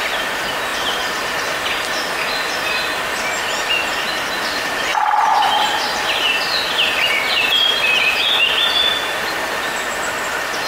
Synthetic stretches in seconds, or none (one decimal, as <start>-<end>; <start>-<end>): 0.7-1.3